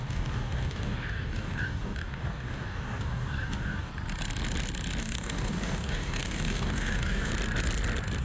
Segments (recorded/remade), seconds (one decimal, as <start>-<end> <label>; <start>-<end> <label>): 0.0-3.9 remade; 3.9-5.0 recorded; 5.0-7.3 remade; 7.3-8.2 recorded